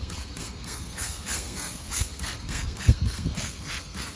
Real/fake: fake